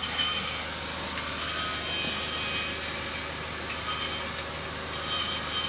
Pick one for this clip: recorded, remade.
recorded